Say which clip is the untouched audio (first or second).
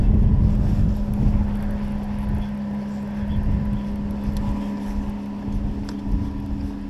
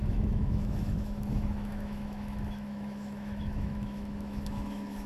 first